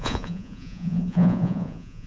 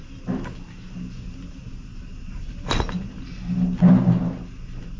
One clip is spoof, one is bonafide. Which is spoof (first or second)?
first